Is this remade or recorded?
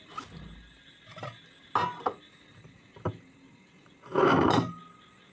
recorded